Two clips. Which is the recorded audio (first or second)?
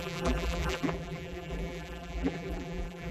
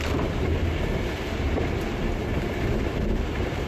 second